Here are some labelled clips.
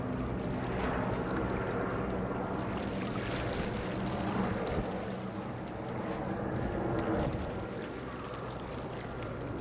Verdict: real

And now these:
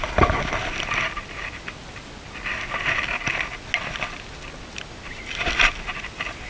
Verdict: real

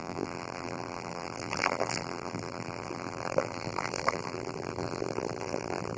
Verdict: fake